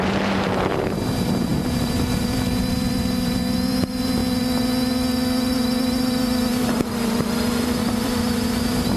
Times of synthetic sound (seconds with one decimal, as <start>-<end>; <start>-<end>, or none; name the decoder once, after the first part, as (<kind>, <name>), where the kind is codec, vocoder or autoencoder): 0.0-4.2 (vocoder, BigVGAN v2); 5.5-9.0